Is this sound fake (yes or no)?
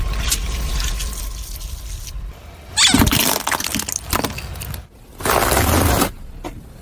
no